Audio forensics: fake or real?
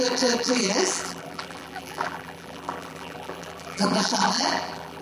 fake